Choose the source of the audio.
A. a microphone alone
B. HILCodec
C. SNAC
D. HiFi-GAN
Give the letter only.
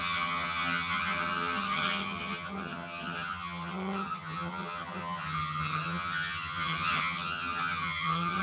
D